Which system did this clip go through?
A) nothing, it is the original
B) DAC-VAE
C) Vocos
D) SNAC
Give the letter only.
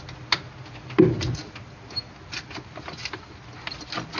A